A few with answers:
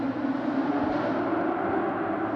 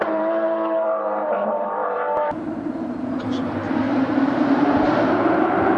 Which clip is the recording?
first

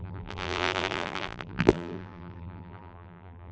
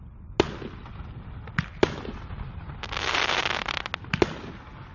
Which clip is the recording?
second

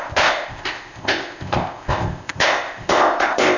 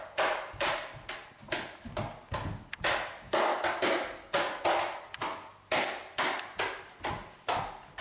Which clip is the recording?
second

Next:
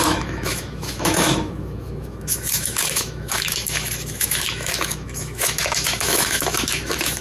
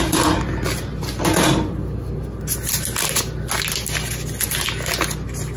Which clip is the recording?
second